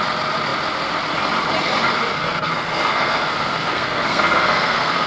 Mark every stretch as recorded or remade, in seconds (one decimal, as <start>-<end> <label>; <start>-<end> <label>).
0.0-2.1 recorded; 2.1-5.1 remade